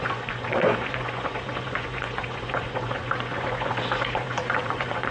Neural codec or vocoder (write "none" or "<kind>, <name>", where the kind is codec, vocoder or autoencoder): vocoder, Vocos